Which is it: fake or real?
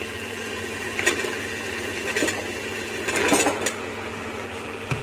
fake